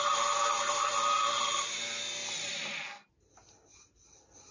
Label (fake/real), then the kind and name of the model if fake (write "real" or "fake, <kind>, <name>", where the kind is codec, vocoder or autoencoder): real